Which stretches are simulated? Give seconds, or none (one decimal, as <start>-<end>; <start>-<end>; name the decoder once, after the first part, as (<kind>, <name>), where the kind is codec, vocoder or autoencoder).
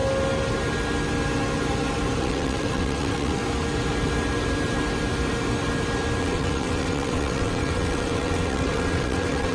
2.2-3.4 (vocoder, WaveNeXt); 6.2-9.5